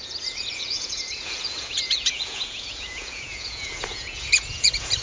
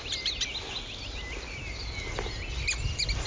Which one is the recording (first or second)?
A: second